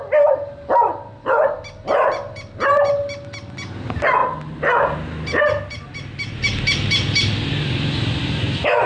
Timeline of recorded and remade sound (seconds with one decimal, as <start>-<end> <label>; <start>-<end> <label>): 0.0-8.9 recorded